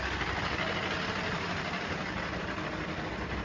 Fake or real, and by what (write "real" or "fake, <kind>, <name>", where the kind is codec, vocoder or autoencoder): real